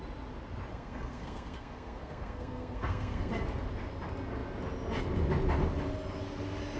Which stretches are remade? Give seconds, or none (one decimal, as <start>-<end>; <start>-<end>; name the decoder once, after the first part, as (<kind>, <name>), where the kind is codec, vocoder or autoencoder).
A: 0.7-3.3 (codec, SNAC)